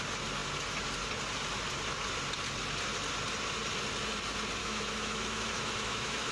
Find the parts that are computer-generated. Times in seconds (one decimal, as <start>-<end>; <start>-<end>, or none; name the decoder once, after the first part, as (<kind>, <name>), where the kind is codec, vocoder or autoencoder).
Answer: 4.6-6.3 (autoencoder, DAC-VAE)